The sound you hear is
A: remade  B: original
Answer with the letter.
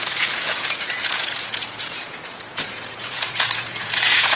A